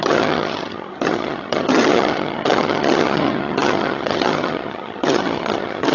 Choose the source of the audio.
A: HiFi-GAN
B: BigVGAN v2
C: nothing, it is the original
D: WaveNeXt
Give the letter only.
A